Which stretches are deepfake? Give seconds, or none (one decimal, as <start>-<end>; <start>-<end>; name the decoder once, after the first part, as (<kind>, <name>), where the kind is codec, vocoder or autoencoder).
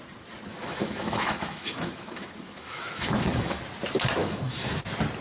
0.5-3.6 (autoencoder, DAC-VAE); 4.2-4.8